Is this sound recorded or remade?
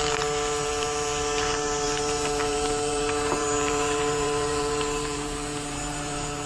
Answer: remade